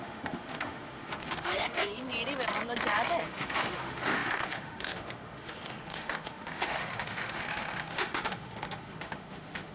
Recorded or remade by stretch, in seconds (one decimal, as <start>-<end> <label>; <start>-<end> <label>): 0.0-1.9 remade; 1.9-3.2 recorded; 3.2-9.7 remade